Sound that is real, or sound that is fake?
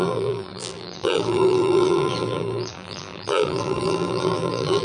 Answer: fake